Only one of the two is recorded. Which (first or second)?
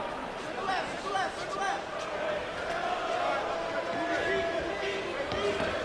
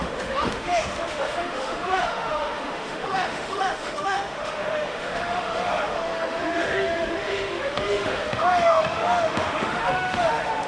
first